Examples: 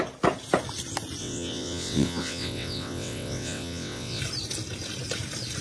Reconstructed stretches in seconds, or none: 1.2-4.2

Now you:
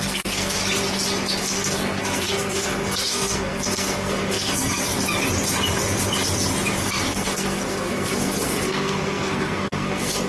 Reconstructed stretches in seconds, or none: 0.0-0.6; 1.4-4.9; 6.8-10.3

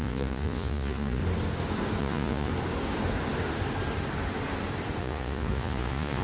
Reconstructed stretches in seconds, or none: 0.0-1.2; 2.0-2.5; 5.0-6.2

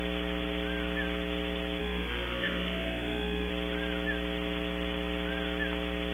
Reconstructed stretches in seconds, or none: 1.8-3.5

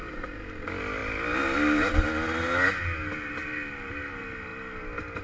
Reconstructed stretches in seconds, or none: none

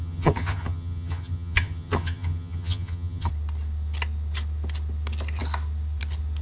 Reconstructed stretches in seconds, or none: 0.0-3.3

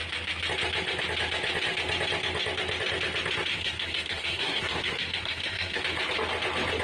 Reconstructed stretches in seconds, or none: 3.5-5.8